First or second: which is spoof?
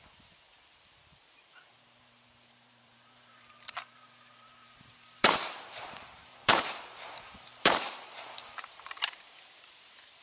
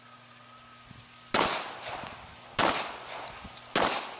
first